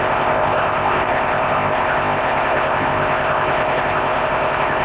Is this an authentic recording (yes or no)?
no